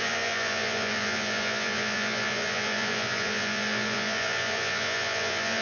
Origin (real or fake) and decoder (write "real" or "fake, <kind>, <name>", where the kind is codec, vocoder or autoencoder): fake, vocoder, Vocos